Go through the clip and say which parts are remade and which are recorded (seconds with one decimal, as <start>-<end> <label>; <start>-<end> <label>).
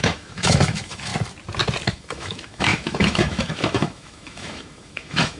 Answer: 0.0-1.1 remade; 1.1-1.9 recorded; 1.9-5.4 remade